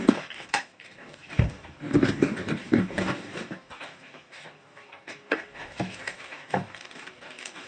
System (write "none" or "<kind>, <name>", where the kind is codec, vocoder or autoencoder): codec, DAC